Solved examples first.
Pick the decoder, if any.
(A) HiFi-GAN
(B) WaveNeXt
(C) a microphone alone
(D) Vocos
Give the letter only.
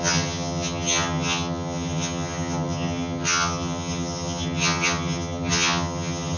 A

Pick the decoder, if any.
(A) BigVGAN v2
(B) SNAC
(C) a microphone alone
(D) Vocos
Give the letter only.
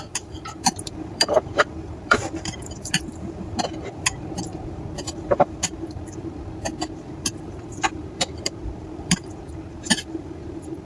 A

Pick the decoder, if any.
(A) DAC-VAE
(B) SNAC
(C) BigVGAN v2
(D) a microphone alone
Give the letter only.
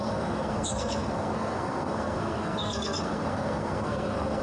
B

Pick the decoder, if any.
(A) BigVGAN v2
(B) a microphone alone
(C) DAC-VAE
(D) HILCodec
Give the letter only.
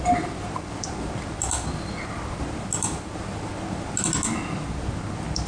B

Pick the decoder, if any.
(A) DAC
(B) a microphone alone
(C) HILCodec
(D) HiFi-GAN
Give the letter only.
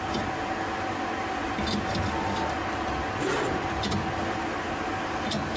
B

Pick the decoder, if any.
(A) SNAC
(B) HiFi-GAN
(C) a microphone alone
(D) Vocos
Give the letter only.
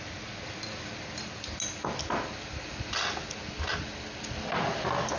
C